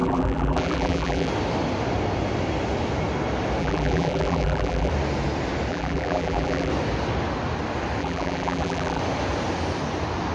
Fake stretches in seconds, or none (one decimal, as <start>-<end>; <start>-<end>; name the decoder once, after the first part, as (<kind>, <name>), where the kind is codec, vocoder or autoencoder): 0.0-1.3 (vocoder, BigVGAN v2); 3.6-4.9; 5.7-6.7; 8.0-9.0